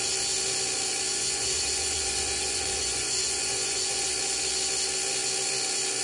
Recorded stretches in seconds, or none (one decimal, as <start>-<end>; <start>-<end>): 0.0-1.1; 4.1-6.0